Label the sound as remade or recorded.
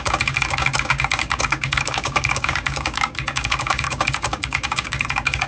remade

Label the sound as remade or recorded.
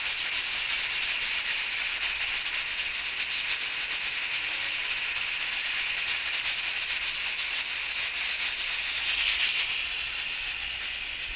recorded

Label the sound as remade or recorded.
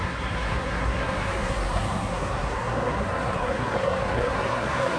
remade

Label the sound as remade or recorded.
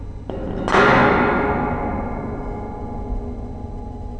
recorded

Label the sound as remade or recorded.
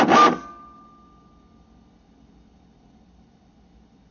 recorded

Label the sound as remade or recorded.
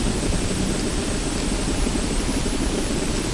recorded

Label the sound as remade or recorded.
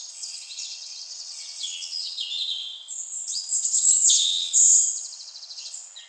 remade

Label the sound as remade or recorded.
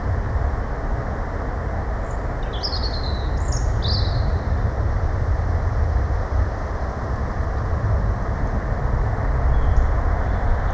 recorded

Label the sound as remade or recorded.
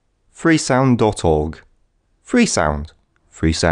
recorded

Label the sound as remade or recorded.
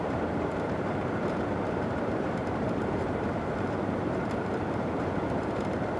remade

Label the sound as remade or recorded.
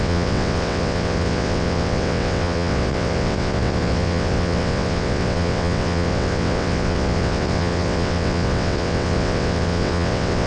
remade